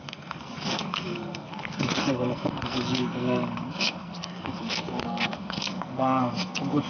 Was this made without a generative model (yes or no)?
no